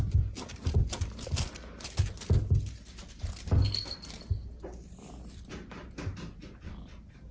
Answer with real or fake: real